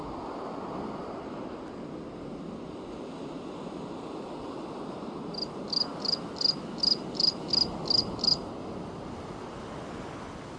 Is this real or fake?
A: real